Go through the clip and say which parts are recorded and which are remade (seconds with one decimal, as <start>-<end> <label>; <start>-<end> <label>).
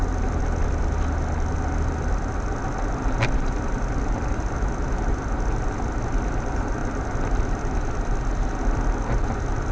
0.0-9.7 recorded